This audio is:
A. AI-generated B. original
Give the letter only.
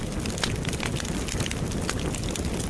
B